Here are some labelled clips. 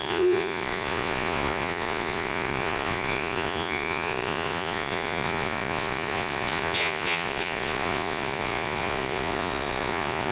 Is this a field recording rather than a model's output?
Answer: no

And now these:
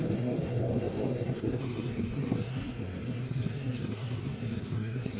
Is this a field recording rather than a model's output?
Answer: no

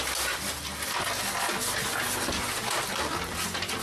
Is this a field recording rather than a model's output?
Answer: yes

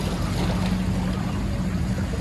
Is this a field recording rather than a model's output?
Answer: yes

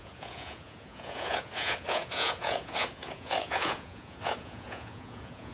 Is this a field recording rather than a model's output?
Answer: no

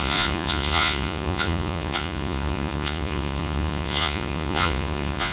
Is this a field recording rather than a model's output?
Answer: no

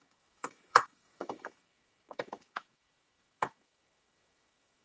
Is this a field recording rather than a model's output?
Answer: no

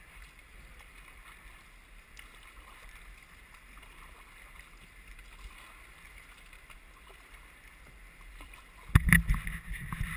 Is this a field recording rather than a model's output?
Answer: yes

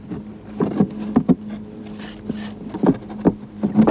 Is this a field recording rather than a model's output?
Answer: yes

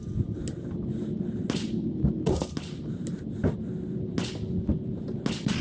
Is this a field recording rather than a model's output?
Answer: yes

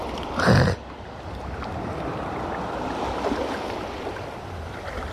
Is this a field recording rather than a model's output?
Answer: yes